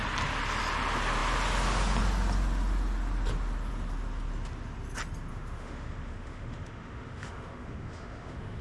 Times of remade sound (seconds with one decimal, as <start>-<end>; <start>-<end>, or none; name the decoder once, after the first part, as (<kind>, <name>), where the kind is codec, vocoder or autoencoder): 5.3-8.6 (autoencoder, DAC-VAE)